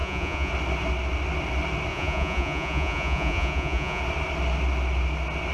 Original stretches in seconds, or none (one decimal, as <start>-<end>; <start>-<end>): 0.5-1.9; 4.0-5.5